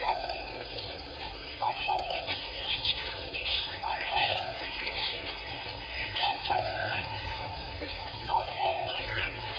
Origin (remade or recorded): remade